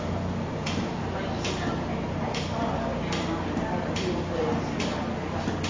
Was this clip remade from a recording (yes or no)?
no